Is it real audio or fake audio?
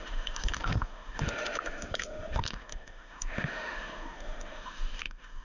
fake